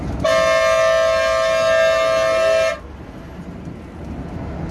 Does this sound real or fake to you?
real